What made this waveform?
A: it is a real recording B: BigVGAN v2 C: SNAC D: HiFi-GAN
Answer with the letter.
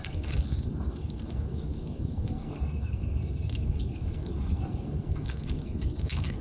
C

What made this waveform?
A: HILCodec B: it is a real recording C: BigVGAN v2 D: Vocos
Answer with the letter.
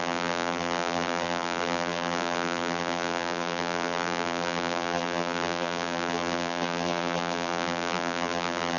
C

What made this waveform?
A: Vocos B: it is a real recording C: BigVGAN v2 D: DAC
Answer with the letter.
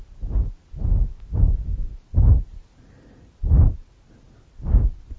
B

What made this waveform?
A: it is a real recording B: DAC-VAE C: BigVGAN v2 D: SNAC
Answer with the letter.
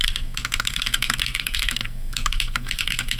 D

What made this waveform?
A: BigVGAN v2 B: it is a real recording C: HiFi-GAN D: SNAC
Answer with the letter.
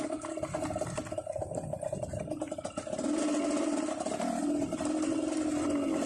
B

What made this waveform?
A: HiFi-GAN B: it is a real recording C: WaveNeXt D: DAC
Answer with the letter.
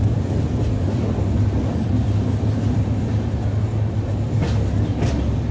B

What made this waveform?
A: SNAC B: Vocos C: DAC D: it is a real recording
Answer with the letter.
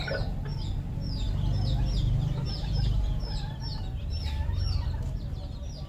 D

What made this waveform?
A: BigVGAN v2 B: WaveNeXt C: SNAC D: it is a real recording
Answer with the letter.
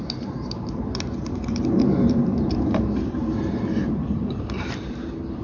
A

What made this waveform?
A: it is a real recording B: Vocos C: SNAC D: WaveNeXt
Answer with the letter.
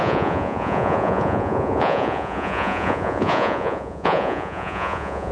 B